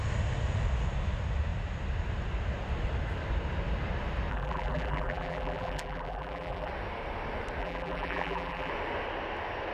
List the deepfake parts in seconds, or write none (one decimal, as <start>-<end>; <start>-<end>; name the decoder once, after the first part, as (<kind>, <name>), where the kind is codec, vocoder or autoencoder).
4.3-6.7 (vocoder, BigVGAN v2); 7.6-8.7